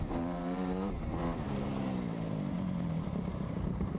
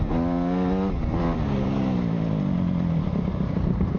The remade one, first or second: first